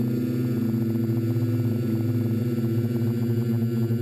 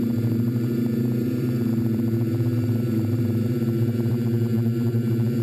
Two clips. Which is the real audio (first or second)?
first